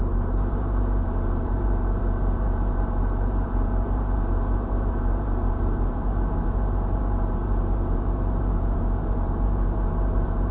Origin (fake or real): fake